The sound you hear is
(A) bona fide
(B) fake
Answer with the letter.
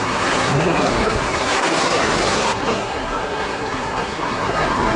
B